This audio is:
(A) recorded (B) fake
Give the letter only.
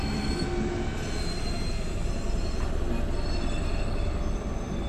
A